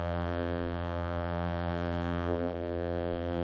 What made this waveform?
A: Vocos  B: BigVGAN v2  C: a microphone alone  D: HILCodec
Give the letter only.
B